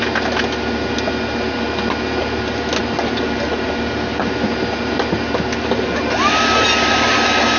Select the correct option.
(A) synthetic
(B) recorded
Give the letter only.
B